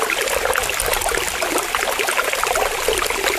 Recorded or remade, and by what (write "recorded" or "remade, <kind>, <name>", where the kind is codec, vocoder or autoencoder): recorded